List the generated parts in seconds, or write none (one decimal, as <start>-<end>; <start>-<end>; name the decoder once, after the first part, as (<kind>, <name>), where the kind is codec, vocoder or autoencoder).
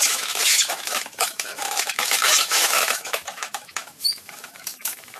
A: 0.0-5.2 (autoencoder, DAC-VAE)